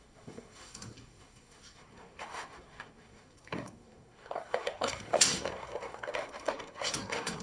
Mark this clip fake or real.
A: fake